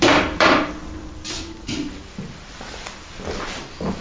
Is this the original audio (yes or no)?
no